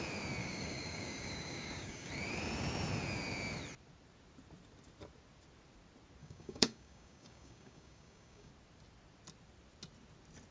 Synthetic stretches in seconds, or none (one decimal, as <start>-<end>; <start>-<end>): 0.4-2.1; 6.2-8.5